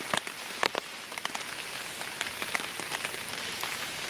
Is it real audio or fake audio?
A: fake